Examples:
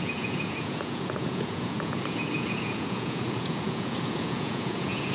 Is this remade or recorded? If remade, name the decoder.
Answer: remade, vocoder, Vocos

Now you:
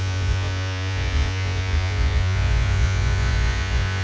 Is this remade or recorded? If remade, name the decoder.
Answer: remade, vocoder, Vocos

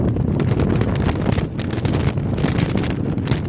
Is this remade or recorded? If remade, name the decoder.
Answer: recorded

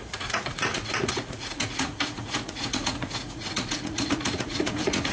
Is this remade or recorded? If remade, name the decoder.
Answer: remade, vocoder, Vocos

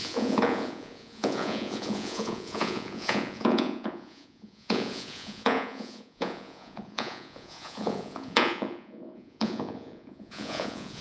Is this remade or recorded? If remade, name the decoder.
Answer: remade, vocoder, Vocos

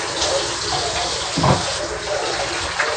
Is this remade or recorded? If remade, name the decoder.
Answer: recorded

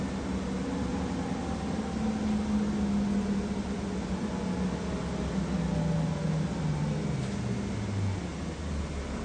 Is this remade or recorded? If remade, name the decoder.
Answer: recorded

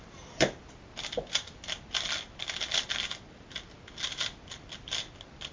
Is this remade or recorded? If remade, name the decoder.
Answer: recorded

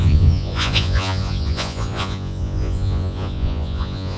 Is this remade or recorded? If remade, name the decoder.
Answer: remade, vocoder, Vocos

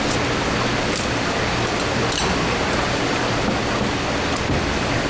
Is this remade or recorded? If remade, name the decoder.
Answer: recorded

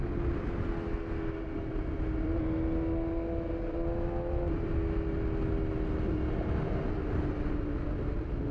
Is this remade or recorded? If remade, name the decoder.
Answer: recorded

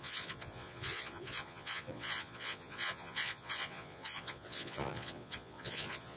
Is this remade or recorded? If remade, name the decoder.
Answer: remade, vocoder, Vocos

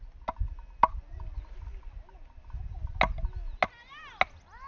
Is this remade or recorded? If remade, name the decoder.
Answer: recorded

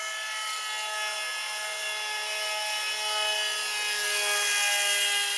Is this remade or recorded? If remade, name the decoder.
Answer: recorded